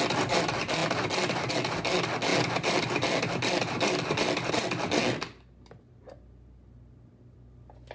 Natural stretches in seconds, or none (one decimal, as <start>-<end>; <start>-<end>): 0.0-7.9